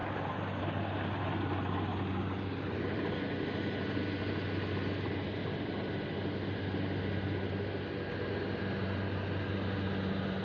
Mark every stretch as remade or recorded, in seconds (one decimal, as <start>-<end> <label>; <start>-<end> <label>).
0.0-10.4 recorded